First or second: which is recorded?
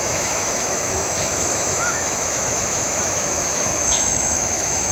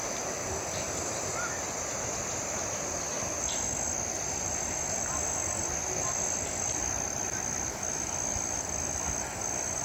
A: second